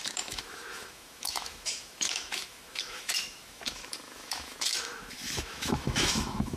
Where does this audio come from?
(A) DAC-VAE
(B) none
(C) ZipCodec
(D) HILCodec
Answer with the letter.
A